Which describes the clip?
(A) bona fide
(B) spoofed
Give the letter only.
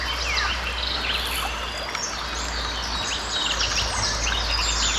A